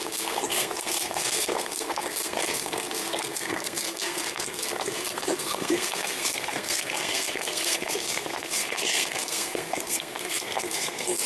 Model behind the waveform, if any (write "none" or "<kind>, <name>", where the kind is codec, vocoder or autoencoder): codec, SNAC